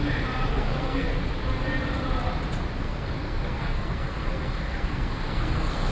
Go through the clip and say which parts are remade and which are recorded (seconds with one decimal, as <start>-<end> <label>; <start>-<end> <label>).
0.0-0.5 recorded; 0.5-1.1 remade; 1.1-2.8 recorded; 2.8-5.9 remade